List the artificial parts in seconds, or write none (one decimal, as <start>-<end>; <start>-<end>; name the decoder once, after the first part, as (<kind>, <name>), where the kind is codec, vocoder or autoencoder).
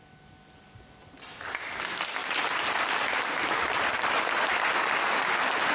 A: 2.2-4.2 (vocoder, BigVGAN v2)